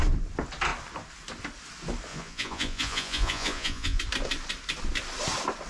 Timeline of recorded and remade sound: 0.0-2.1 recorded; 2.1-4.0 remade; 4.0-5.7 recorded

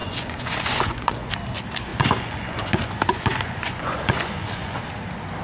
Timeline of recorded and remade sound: 0.0-1.3 remade; 1.3-1.9 recorded; 1.9-4.8 remade; 4.8-5.4 recorded

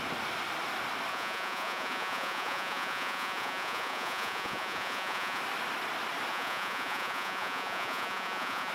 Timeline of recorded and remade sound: 0.0-1.1 recorded; 1.1-5.4 remade; 5.4-6.3 recorded; 6.3-8.7 remade

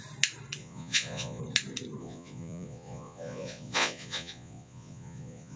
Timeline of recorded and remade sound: 0.0-0.6 recorded; 0.6-1.4 remade; 1.4-2.0 recorded; 2.0-5.6 remade